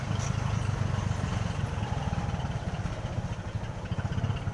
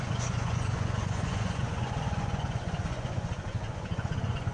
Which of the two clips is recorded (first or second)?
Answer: first